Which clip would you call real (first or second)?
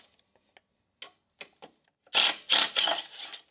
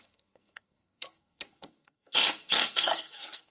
first